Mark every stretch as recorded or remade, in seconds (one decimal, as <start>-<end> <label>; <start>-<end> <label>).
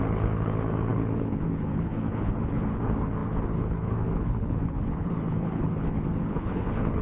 0.0-7.0 remade